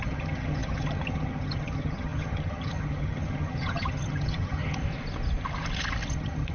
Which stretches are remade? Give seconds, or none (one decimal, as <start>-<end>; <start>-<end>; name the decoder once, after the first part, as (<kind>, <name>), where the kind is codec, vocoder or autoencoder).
0.0-4.8 (vocoder, HiFi-GAN); 6.1-6.5